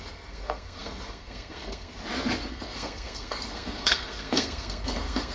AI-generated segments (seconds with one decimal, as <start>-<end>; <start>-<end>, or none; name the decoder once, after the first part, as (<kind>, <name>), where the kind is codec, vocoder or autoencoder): 0.0-2.0 (codec, SNAC); 2.5-5.3